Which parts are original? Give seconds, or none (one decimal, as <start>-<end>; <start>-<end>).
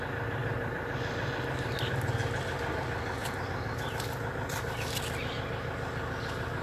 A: 0.0-0.4; 1.3-3.2; 5.3-6.6